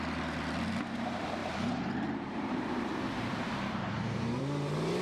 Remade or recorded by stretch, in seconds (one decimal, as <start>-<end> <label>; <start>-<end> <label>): 0.0-1.4 recorded; 1.4-4.4 remade; 4.4-5.0 recorded